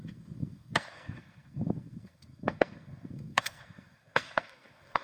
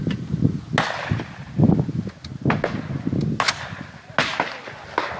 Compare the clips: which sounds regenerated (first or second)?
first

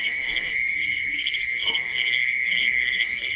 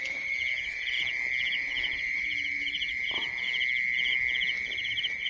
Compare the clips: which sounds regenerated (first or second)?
first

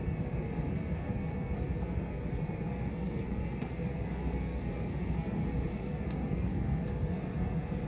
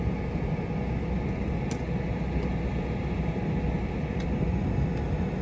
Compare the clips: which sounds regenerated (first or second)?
first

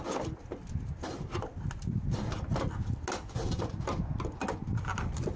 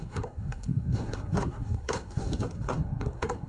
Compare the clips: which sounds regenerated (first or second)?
second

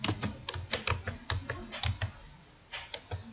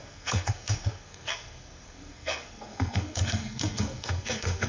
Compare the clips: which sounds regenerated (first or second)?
second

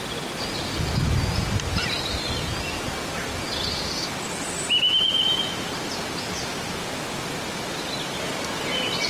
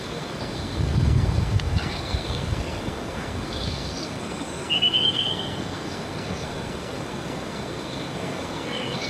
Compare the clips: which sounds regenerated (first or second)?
second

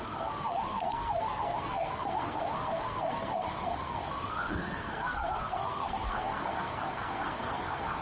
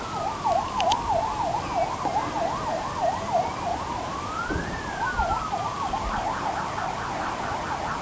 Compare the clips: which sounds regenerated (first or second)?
first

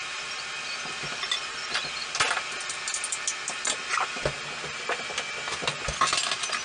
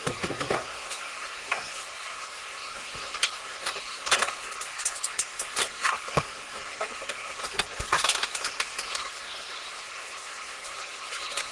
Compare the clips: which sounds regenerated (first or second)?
second